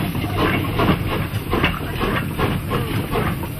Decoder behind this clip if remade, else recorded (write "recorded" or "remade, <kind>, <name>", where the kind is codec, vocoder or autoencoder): recorded